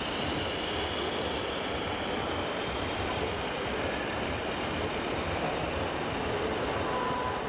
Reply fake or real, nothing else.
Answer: fake